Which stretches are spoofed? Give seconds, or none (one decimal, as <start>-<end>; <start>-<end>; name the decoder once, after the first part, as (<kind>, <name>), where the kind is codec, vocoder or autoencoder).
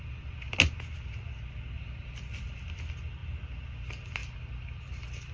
1.8-2.3 (vocoder, BigVGAN v2); 4.2-5.3